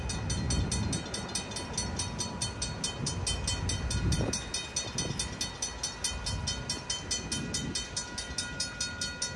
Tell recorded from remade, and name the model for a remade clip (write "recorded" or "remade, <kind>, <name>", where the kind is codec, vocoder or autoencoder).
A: recorded